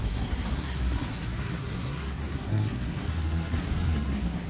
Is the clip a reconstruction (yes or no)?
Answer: yes